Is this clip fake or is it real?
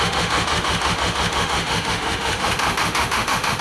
fake